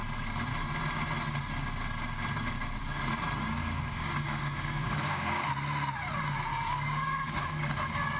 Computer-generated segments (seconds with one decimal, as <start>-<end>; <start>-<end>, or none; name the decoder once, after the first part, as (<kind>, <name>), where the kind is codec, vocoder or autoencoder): 3.6-5.5 (codec, DAC); 6.5-8.2